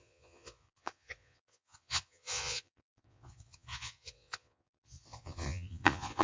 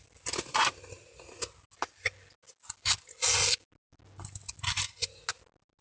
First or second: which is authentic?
second